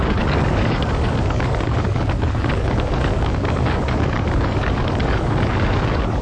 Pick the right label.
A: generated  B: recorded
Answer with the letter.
A